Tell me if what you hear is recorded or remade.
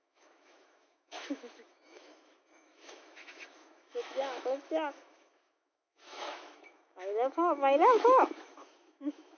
remade